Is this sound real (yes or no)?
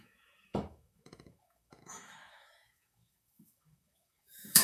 no